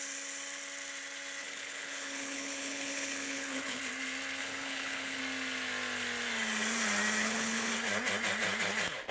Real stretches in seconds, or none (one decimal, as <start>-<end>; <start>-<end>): 0.0-1.4; 3.8-4.4; 5.2-7.2; 7.7-9.1